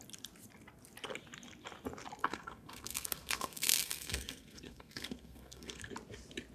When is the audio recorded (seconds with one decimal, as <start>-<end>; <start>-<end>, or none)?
0.0-2.2; 5.9-6.5